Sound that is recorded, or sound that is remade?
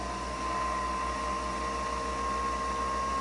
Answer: recorded